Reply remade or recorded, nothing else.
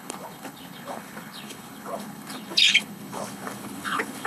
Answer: remade